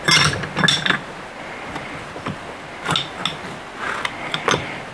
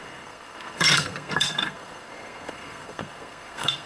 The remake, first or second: second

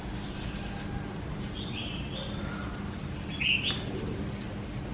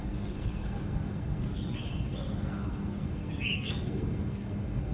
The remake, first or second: second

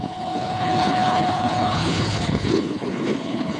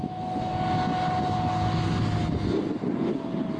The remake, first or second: first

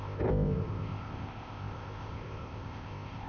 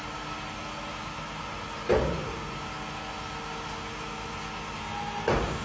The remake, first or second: first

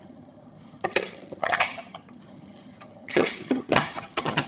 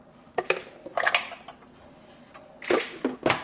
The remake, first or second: first